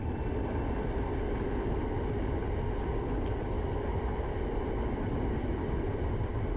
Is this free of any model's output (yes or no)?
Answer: yes